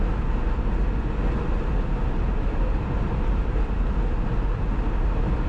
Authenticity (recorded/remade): recorded